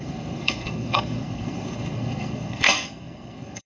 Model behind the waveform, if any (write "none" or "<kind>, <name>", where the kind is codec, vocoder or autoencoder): codec, SNAC